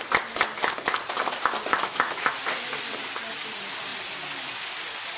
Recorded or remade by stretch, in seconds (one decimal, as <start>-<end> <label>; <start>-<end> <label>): 0.0-1.7 recorded; 1.7-2.3 remade; 2.3-5.2 recorded

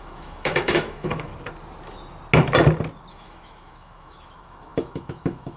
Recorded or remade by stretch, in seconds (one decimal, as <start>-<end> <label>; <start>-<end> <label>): 0.0-1.3 remade; 1.3-3.1 recorded; 3.1-5.6 remade

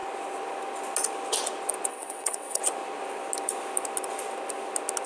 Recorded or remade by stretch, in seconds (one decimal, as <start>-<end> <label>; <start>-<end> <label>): 0.0-1.9 recorded; 1.9-2.6 remade; 2.6-5.1 recorded

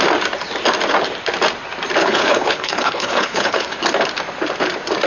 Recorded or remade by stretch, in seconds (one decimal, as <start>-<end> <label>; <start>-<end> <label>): 0.0-2.0 recorded; 2.0-3.8 remade; 3.8-5.1 recorded

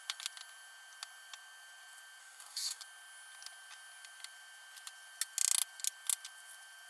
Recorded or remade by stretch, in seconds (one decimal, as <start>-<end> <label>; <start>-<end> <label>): 0.0-2.2 recorded; 2.2-2.8 remade; 2.8-6.9 recorded